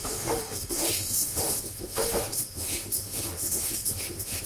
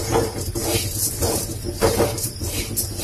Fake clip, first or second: first